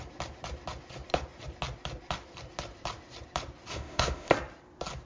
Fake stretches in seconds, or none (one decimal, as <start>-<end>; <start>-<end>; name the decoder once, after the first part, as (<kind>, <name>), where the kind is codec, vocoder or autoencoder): 3.7-4.3 (autoencoder, DAC-VAE)